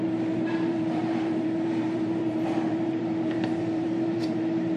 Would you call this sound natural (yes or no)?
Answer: no